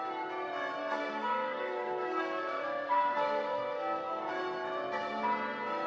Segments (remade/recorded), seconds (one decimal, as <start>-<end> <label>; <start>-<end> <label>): 0.0-0.8 recorded; 0.8-4.3 remade; 4.3-5.9 recorded